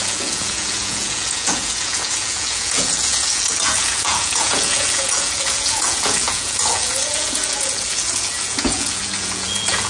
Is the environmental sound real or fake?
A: fake